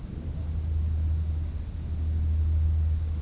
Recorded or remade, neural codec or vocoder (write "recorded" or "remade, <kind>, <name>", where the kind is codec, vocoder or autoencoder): recorded